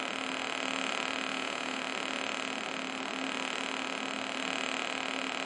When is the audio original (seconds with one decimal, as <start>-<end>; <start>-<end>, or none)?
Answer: 0.0-1.3; 1.8-5.5